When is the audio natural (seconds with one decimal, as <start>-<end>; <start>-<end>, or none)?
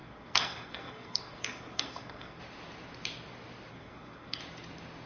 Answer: 2.4-3.7; 4.4-5.1